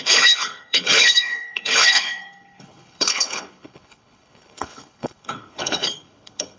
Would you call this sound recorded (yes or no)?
no